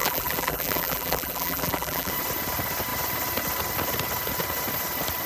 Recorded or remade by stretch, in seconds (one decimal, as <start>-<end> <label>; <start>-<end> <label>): 0.0-2.1 remade; 2.1-5.3 recorded